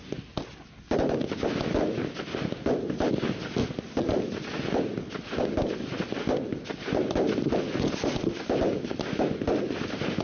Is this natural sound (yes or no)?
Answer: yes